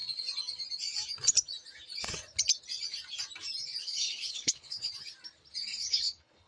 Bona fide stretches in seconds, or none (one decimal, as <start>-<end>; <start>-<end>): 0.0-3.8; 4.9-5.7